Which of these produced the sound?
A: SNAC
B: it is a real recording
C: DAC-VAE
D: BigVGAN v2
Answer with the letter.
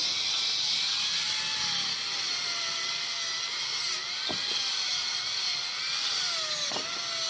B